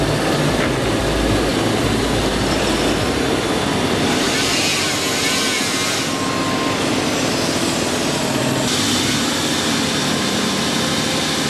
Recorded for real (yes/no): yes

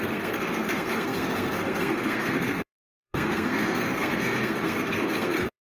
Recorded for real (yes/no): no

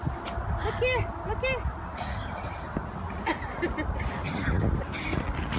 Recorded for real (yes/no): yes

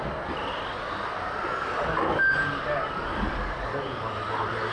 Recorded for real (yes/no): yes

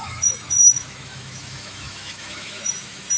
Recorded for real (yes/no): no